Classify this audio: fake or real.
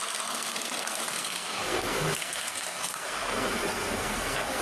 fake